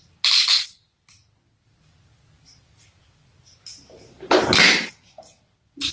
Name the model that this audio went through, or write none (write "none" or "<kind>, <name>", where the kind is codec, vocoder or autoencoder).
none